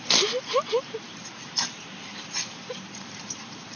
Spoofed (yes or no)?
yes